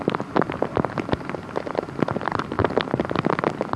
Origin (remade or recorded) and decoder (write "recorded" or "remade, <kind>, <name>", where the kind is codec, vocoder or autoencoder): recorded